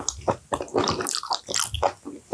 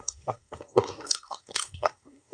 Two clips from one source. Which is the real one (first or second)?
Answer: first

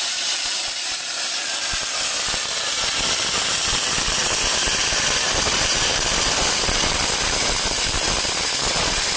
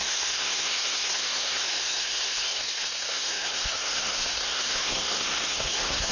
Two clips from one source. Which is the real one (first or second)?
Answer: first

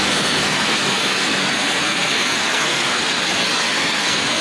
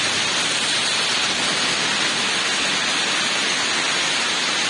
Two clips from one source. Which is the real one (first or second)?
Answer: second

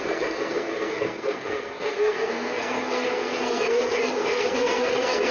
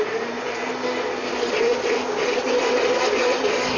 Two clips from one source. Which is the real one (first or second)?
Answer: second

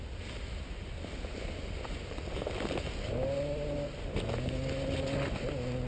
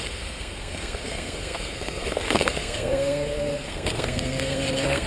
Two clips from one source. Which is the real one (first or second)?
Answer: first